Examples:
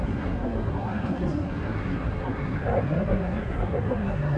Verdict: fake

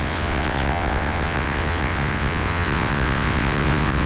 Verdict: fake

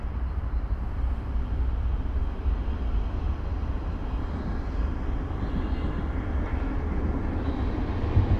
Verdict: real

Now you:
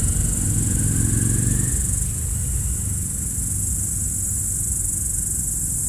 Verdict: real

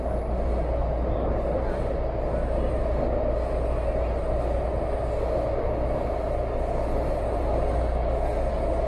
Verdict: real